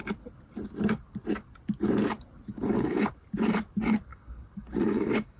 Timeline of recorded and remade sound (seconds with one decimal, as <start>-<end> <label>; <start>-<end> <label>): 0.0-2.5 recorded; 2.5-3.1 remade; 3.1-4.1 recorded; 4.1-5.4 remade